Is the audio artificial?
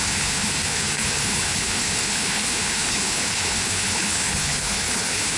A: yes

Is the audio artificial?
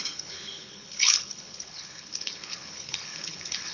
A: yes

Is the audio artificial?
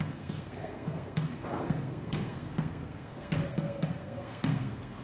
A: yes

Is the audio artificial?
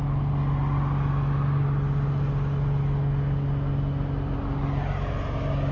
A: no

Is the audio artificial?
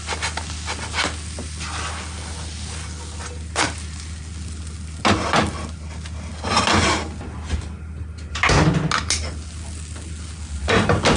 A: no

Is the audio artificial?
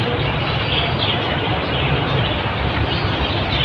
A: no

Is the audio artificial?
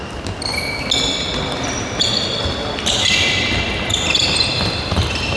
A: no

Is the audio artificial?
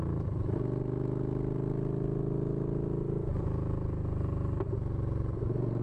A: no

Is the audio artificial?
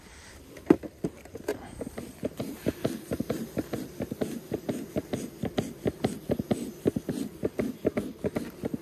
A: yes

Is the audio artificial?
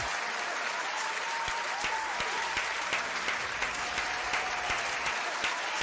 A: no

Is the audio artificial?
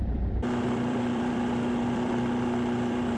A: yes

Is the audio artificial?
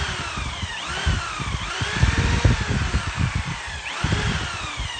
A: no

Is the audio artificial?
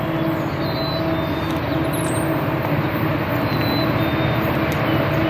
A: no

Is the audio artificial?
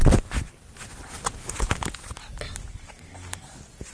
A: no